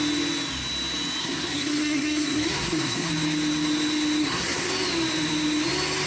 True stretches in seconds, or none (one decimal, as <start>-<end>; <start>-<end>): 0.0-1.2; 3.1-4.2; 4.7-6.1